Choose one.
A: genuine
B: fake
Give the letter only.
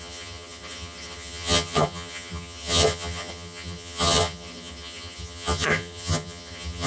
B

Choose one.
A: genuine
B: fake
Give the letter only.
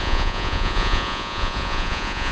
B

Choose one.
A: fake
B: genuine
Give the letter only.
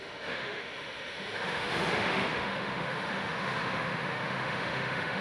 A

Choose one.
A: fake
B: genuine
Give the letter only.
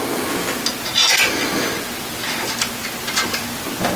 B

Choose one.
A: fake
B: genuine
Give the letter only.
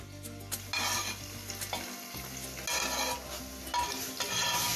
B